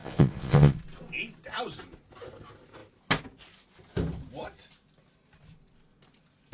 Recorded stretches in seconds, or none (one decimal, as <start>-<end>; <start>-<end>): 0.8-6.5